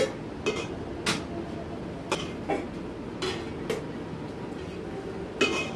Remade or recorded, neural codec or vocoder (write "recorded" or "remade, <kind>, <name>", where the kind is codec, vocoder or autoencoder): recorded